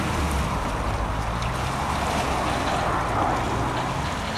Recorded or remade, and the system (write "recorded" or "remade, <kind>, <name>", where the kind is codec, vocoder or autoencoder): recorded